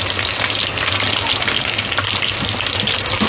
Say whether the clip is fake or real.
real